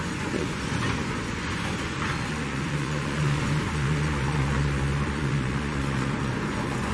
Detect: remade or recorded remade